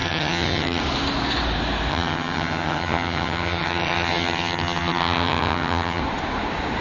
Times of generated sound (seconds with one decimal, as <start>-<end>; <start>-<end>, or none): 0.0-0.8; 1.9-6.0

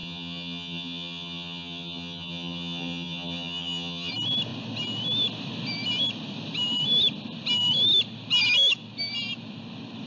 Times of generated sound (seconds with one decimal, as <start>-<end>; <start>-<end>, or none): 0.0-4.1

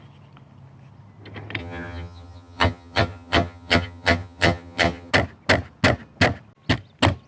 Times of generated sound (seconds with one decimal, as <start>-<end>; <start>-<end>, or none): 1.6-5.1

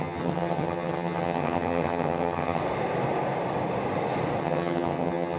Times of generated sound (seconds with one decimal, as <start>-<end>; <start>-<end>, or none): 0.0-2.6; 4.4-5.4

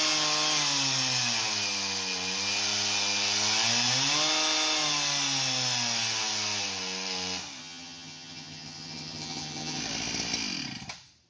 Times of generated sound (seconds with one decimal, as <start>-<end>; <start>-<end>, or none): 7.6-9.8

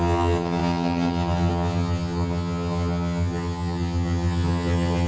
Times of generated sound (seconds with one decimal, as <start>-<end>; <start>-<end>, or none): 0.0-5.1

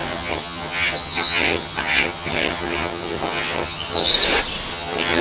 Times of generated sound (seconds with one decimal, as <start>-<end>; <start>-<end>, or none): 0.0-4.1; 4.7-5.2